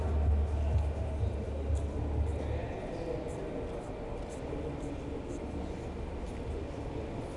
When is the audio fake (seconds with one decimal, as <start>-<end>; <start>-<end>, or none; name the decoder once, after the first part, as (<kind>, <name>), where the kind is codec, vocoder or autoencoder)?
none